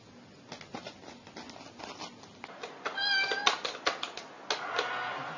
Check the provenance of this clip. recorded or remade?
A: recorded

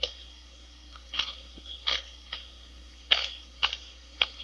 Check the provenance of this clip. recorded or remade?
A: remade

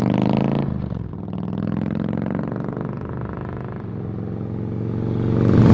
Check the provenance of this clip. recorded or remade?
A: recorded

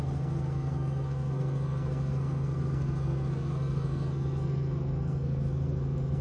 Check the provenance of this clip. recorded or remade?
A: remade